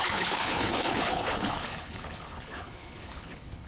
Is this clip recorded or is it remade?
remade